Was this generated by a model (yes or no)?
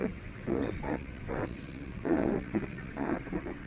yes